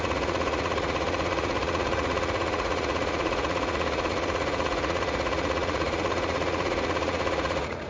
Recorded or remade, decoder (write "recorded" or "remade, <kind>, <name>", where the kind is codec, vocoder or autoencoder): remade, vocoder, Vocos